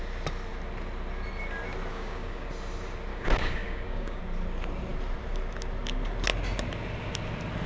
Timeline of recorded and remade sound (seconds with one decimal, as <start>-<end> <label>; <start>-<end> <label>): 0.0-1.9 recorded; 1.9-2.5 remade; 2.5-3.1 recorded; 3.1-4.2 remade; 4.2-7.7 recorded